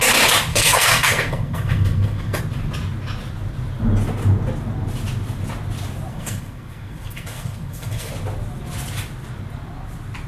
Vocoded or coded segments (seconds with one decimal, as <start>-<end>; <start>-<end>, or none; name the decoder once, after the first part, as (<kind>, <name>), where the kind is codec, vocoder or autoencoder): 0.5-2.4 (codec, SNAC); 6.1-8.1

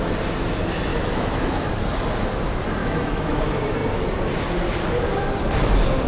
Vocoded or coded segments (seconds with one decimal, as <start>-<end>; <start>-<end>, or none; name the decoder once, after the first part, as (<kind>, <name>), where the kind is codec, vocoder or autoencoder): 0.9-1.7 (autoencoder, DAC-VAE); 2.8-3.4

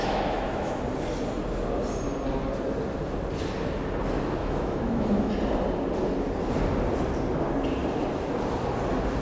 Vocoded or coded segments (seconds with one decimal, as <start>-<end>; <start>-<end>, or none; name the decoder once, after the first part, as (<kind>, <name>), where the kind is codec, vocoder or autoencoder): 0.0-0.8 (autoencoder, DAC-VAE); 4.4-5.3

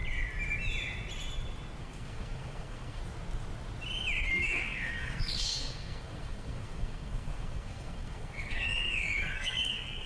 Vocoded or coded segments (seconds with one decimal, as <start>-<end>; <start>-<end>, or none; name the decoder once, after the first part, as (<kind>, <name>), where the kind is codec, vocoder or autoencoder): 1.8-3.0 (codec, SNAC); 4.3-10.1

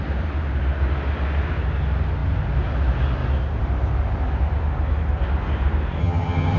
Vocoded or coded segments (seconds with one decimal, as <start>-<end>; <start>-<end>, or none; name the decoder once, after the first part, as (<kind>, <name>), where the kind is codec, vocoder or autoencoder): 6.0-6.6 (vocoder, HiFi-GAN)

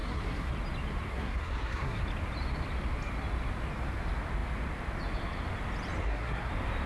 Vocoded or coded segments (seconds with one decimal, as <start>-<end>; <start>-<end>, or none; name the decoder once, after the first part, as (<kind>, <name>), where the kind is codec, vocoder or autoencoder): 0.0-0.5 (codec, SNAC); 1.1-2.0; 6.0-6.5